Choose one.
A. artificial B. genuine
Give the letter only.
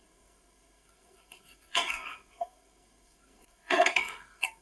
A